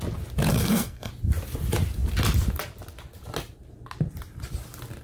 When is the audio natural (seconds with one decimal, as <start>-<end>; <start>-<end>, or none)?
0.0-0.5; 1.1-5.0